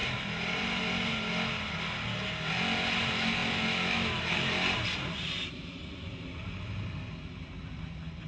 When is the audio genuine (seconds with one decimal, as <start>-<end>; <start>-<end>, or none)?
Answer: 0.8-8.3